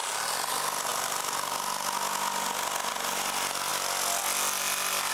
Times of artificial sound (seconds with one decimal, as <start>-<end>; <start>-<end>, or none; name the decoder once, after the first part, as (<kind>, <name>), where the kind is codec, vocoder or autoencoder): none